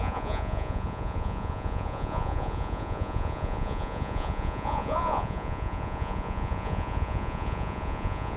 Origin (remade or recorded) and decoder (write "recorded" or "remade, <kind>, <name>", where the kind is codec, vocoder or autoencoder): remade, vocoder, Vocos